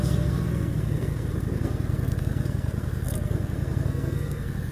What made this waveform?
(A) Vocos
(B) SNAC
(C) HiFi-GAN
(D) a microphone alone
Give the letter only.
B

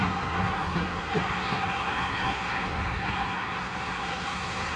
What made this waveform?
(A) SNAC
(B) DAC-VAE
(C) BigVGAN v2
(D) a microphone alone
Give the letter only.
A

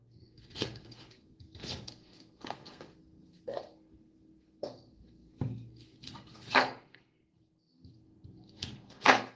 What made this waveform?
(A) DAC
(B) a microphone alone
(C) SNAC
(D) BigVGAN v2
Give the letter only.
C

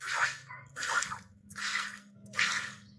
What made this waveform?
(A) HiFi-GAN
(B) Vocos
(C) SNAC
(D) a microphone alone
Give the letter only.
C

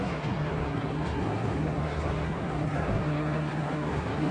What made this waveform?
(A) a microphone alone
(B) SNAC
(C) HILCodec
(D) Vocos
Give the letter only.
B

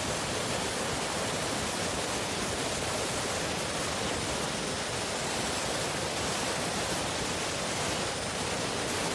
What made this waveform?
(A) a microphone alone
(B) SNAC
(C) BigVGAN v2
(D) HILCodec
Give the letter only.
A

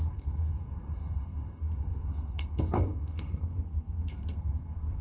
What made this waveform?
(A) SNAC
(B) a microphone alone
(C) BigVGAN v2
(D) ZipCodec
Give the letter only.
A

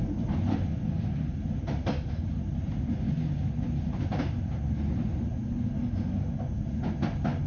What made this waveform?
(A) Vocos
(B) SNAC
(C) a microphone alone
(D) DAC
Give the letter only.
C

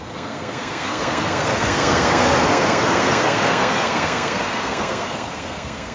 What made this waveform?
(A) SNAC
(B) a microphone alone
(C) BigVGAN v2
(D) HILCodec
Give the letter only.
A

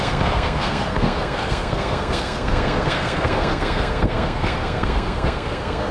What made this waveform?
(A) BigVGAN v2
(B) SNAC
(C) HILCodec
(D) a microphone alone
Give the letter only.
B